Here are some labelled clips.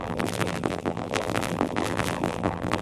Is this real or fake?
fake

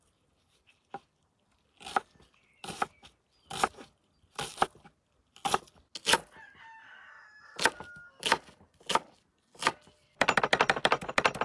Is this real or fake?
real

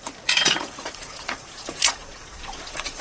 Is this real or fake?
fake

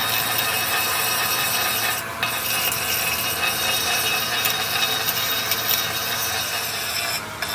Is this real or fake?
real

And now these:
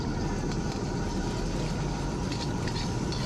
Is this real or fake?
real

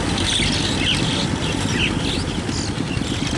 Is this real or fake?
real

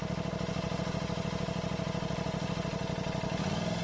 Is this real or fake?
real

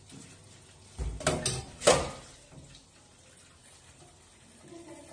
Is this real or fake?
real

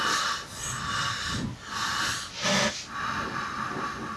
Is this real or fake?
real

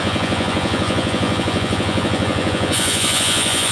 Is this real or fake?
fake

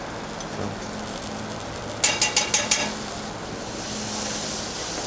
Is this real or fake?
real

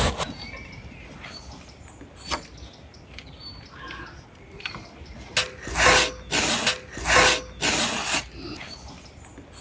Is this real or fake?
real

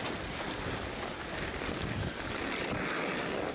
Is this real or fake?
real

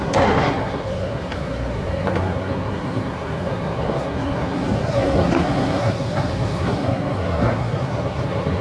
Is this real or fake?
fake